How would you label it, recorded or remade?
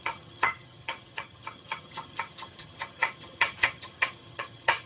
remade